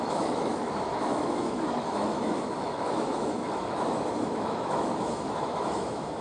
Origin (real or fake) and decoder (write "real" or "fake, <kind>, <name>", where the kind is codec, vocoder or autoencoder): fake, autoencoder, DAC-VAE